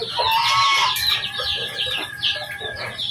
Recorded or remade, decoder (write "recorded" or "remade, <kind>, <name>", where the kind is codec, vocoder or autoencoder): recorded